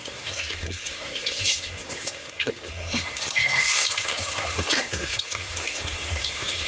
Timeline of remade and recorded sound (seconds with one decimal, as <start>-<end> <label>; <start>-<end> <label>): 0.0-6.7 remade